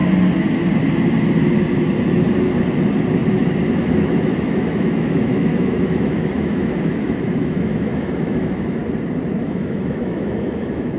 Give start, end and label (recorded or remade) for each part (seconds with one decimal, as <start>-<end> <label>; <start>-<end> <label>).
0.0-3.7 recorded; 3.7-8.8 remade; 8.8-9.4 recorded; 9.4-11.0 remade